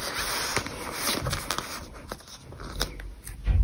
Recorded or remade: recorded